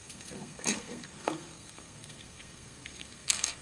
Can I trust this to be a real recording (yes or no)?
no